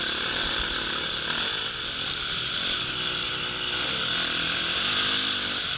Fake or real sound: real